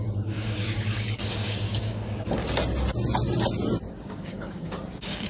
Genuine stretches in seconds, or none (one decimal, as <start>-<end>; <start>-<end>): 2.4-3.9